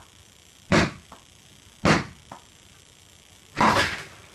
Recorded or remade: recorded